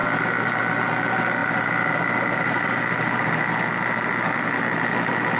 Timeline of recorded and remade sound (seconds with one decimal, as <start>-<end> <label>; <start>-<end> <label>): 0.0-5.4 recorded